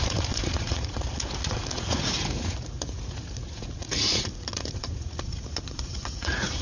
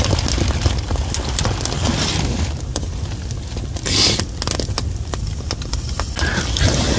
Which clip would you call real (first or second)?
second